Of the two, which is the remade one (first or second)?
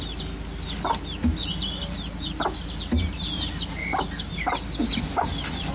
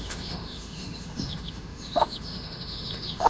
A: second